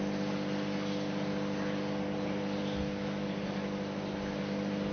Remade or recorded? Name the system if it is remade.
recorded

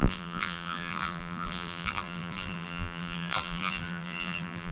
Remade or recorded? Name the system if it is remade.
remade, vocoder, BigVGAN v2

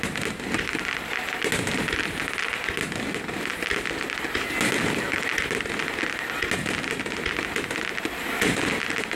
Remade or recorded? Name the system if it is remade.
recorded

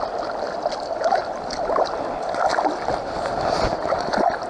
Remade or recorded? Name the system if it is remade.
recorded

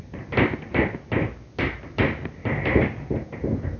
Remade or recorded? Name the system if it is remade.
recorded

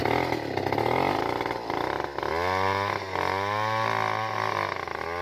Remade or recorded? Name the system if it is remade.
recorded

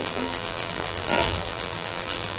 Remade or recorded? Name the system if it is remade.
remade, vocoder, BigVGAN v2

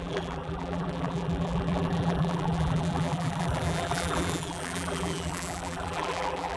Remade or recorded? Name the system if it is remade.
remade, vocoder, BigVGAN v2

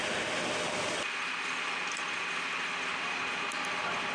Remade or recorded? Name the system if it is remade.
recorded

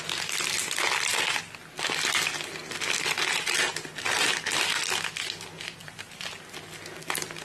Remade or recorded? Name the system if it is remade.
recorded